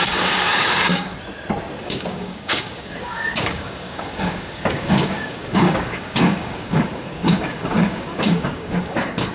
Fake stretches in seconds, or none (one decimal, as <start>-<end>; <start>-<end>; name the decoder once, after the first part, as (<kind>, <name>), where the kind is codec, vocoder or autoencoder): 0.0-1.1 (codec, DAC); 1.8-9.3